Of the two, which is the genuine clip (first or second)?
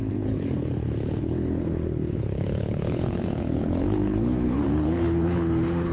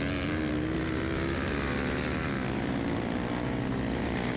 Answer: second